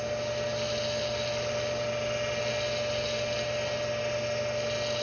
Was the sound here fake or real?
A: real